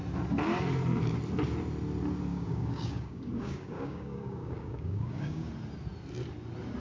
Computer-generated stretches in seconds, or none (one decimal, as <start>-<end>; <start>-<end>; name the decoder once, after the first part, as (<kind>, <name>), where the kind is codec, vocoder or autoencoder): 2.3-5.5 (codec, DAC)